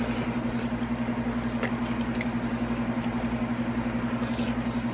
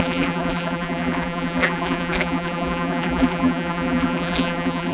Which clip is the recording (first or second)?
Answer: first